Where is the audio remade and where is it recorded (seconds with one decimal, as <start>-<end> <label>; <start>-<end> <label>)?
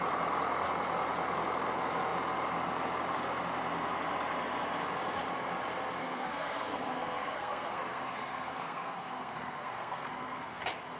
0.0-6.0 recorded; 6.0-10.6 remade; 10.6-11.0 recorded